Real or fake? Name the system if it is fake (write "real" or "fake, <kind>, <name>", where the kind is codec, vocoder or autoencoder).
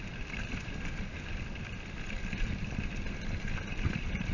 real